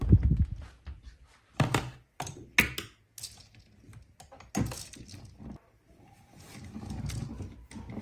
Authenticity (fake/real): real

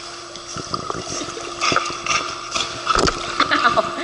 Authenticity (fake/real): real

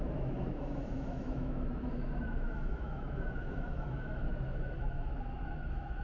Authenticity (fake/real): fake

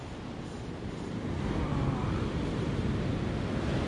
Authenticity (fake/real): real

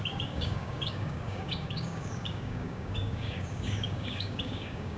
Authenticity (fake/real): fake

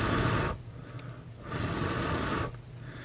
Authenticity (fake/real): real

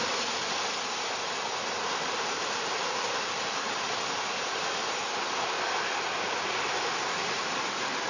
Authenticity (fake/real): real